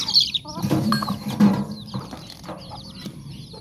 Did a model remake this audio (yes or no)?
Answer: yes